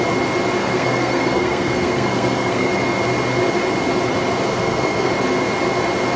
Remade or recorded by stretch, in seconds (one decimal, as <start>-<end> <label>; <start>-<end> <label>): 0.0-0.6 recorded; 0.6-2.7 remade; 2.7-4.5 recorded; 4.5-5.1 remade; 5.1-6.2 recorded